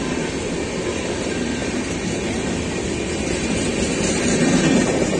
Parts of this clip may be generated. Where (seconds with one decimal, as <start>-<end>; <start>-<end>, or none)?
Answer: none